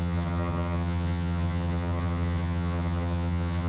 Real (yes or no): no